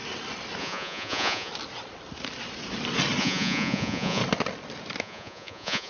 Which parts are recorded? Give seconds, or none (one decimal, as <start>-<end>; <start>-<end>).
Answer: 0.0-0.6; 1.5-3.2; 4.2-5.0

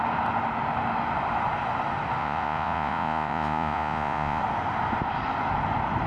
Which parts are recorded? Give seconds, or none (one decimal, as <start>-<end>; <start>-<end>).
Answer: 0.0-2.2; 4.4-6.1

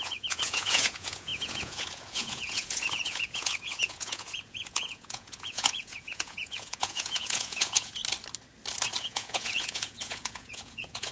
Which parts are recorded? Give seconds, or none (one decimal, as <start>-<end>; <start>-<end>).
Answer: 8.0-9.0

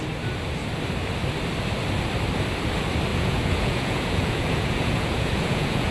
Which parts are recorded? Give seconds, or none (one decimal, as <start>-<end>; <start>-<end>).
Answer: 0.0-3.1